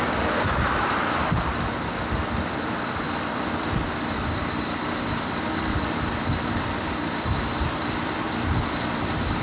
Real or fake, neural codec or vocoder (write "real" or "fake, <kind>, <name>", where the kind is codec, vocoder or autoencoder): real